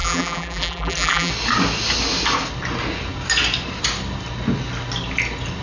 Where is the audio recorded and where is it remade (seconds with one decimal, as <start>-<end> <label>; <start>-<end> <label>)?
0.0-1.3 remade; 1.3-5.6 recorded